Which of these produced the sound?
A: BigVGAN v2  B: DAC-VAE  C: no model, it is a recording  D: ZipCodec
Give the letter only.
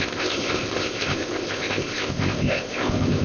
D